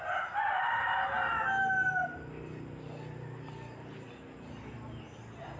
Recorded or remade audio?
recorded